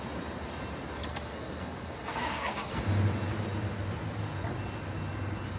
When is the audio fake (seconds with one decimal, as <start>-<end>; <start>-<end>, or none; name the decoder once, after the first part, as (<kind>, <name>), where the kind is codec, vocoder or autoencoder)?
1.1-2.8 (codec, SNAC)